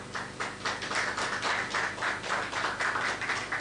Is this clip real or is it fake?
real